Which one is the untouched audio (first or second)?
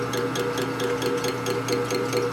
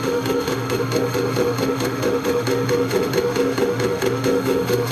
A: first